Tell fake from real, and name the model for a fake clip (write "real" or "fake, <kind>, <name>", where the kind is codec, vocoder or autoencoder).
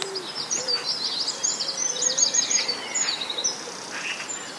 real